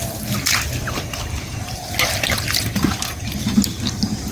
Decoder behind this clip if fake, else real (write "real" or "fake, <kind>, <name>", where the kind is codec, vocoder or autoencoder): real